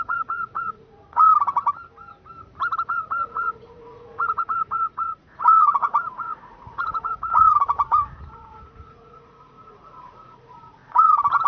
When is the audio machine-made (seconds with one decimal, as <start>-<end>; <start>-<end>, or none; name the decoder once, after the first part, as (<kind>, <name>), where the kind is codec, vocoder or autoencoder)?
0.0-1.3 (vocoder, Vocos); 2.9-11.5